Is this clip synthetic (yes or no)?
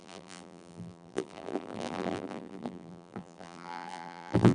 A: yes